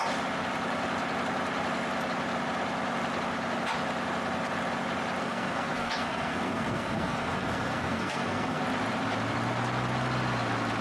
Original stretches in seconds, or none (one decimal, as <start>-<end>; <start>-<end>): 0.0-5.2; 8.6-10.8

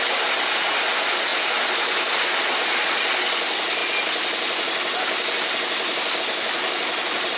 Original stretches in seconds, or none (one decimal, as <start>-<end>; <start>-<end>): 0.0-7.4

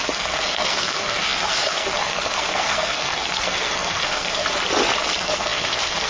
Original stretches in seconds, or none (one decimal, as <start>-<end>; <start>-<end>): 4.4-5.0

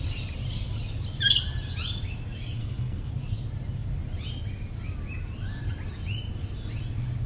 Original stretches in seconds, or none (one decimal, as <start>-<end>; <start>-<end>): 0.0-2.6; 3.1-7.3